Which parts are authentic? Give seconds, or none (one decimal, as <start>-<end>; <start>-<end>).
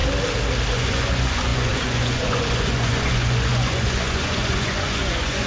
0.0-0.7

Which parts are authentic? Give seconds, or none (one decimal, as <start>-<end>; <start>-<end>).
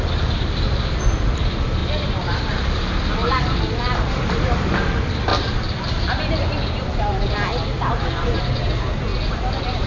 0.0-9.9